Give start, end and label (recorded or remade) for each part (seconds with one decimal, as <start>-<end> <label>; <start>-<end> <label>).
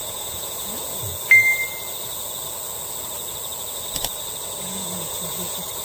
0.0-1.1 remade; 1.1-4.6 recorded; 4.6-5.8 remade